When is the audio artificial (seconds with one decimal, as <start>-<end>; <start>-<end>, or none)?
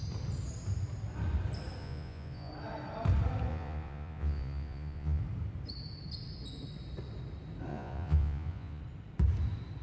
1.8-2.5; 3.5-5.2; 7.7-8.8